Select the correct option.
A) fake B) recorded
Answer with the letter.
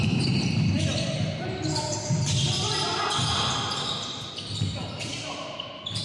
B